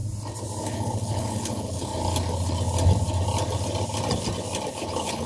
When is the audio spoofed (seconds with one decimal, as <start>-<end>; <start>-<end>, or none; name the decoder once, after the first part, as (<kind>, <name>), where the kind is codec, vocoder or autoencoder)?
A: 0.6-1.9 (codec, HILCodec); 4.7-5.3

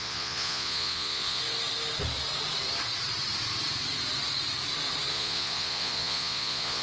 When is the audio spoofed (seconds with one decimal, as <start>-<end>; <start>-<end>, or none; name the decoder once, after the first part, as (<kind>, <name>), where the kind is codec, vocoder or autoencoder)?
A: 0.0-1.4 (vocoder, Vocos); 5.1-6.8

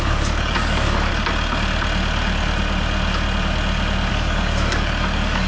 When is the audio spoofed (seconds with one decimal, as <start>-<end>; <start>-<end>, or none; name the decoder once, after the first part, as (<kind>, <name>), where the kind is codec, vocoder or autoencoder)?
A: 0.0-1.1 (codec, DAC); 4.1-5.5

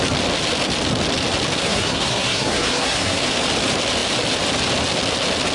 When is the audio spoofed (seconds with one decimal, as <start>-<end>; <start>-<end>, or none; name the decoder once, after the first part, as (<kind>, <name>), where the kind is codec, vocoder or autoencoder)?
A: 1.6-3.2 (codec, SNAC)

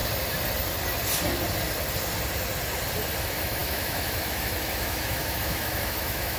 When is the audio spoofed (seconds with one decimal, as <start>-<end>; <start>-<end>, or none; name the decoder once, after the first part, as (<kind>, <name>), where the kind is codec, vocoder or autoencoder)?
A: 3.2-6.4 (autoencoder, DAC-VAE)

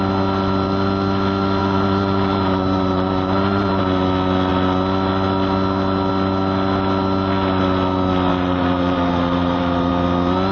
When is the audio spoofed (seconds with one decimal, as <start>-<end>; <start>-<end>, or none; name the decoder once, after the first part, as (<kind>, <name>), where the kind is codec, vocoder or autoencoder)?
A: 1.6-3.8 (vocoder, BigVGAN v2); 8.3-9.9

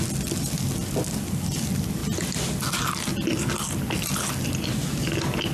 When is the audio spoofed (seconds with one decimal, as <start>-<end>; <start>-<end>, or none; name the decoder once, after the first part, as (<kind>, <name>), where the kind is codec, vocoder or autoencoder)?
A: none

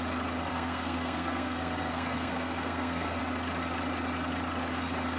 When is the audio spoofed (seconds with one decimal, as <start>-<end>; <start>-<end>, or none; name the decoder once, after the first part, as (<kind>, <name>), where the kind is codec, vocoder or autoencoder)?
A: 0.5-3.2 (codec, SNAC)